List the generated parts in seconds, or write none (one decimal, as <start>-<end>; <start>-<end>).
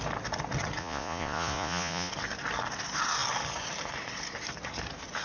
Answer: 0.8-2.1